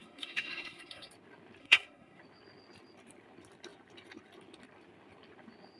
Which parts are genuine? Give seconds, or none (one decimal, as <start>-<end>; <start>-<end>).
1.1-1.6; 2.2-5.8